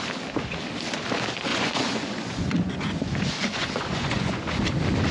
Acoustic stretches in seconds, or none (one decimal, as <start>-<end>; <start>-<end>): 0.0-1.5; 4.6-5.1